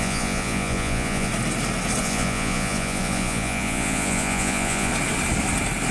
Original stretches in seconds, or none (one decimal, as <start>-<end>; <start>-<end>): 1.3-2.0; 4.9-5.9